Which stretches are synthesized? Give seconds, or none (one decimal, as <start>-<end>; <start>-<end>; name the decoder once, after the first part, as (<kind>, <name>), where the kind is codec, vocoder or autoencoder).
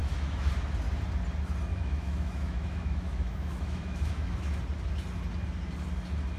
0.0-0.5 (autoencoder, DAC-VAE); 1.7-4.6